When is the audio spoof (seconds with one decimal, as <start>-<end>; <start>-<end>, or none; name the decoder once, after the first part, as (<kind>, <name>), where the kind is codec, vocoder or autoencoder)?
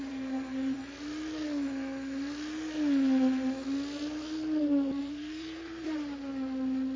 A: 0.0-0.8 (vocoder, BigVGAN v2); 5.0-6.3